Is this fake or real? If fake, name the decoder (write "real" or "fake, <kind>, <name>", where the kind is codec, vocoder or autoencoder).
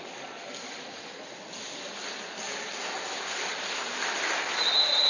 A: real